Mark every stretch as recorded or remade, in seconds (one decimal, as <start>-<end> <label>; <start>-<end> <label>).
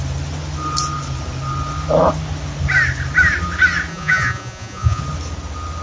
0.0-3.9 recorded; 3.9-5.0 remade; 5.0-5.8 recorded